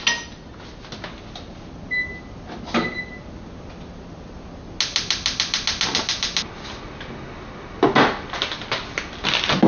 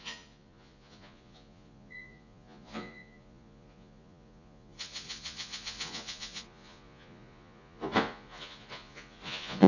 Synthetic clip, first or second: second